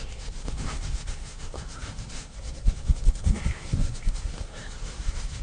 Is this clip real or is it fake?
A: fake